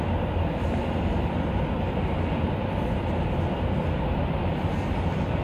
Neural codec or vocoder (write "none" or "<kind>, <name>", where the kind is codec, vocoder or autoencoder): none